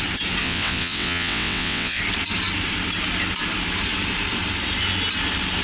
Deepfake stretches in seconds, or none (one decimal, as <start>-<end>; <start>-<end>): 0.4-2.0